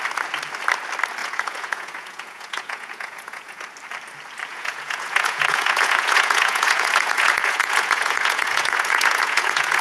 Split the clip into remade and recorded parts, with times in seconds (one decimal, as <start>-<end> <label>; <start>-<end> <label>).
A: 0.0-1.2 recorded; 1.2-3.6 remade; 3.6-4.5 recorded; 4.5-9.8 remade